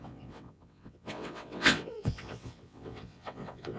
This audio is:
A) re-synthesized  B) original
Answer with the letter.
A